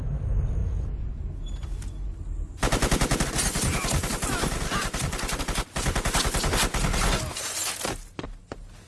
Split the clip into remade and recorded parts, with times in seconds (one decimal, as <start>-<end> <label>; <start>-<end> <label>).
0.0-8.9 recorded